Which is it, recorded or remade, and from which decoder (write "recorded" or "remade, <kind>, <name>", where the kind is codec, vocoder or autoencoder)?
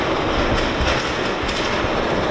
recorded